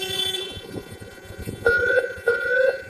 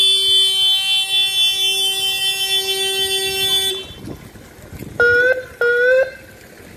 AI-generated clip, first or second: first